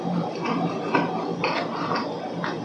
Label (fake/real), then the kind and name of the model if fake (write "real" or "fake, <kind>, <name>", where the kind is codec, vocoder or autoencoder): real